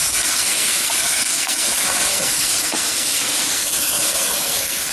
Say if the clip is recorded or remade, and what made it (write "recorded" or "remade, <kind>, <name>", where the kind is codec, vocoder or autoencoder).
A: remade, codec, SNAC